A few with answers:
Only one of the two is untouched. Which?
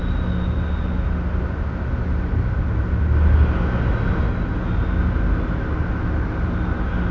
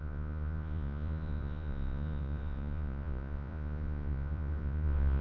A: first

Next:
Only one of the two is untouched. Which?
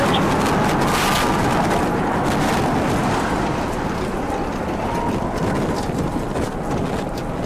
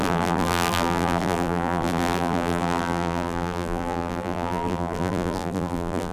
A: first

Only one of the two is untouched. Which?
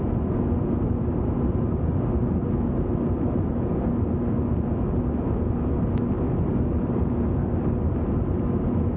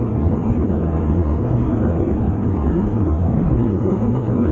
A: first